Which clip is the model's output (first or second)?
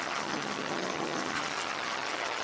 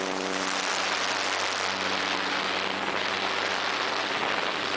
first